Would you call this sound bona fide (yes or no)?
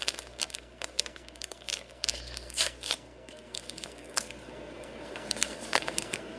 no